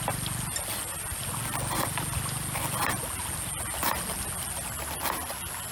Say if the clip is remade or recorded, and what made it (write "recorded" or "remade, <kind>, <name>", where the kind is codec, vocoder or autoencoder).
recorded